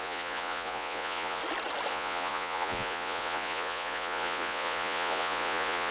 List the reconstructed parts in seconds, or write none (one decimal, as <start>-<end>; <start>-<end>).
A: 0.0-1.4; 1.9-5.9